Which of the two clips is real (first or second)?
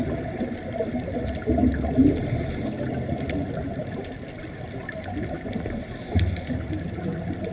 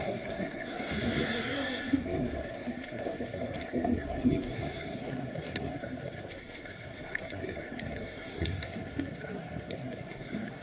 first